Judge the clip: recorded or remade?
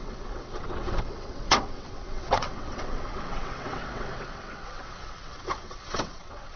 remade